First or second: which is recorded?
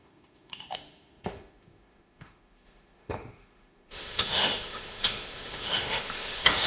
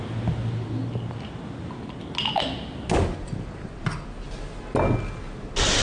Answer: second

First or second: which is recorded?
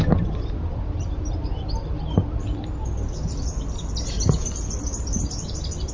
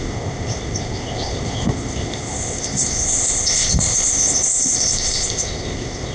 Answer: first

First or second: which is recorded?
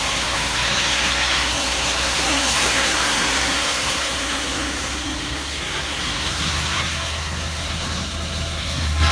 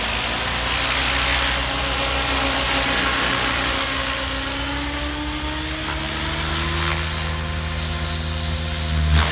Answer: second